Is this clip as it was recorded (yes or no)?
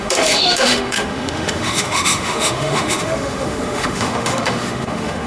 no